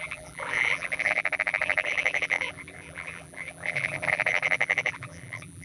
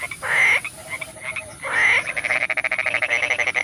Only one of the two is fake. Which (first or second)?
first